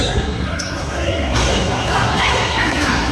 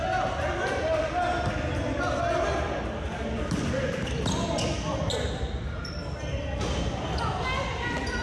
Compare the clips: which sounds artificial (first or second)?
first